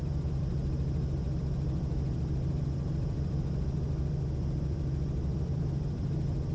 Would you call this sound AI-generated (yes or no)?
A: yes